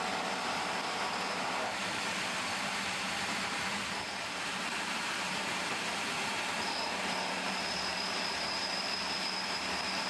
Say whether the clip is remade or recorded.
remade